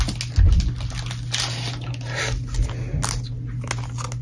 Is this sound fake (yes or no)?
no